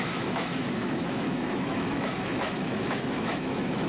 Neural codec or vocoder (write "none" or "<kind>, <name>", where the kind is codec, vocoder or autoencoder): autoencoder, DAC-VAE